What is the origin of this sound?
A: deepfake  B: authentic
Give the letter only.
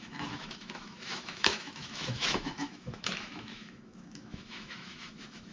A